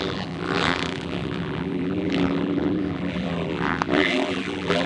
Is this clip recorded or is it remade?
remade